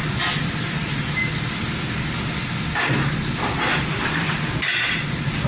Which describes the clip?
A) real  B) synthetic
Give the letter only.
A